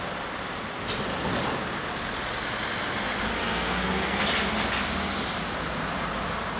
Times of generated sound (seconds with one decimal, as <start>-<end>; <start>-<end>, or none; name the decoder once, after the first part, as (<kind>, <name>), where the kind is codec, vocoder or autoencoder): 3.4-4.2 (codec, SNAC)